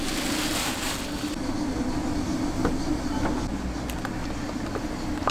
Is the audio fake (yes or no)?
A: no